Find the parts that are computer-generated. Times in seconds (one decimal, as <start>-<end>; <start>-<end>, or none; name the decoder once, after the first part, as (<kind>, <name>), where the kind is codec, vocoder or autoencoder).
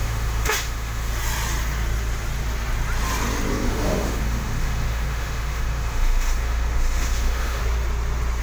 0.0-1.1 (autoencoder, DAC-VAE); 3.5-7.6